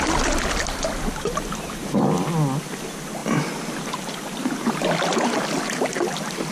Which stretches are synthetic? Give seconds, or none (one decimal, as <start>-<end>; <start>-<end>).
none